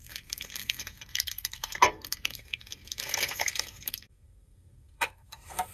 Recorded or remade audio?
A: remade